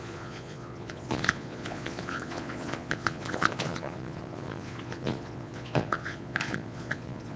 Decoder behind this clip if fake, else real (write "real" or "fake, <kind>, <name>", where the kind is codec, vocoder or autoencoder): fake, vocoder, Vocos